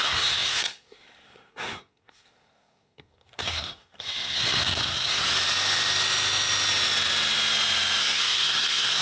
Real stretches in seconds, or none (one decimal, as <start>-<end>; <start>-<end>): 5.2-8.0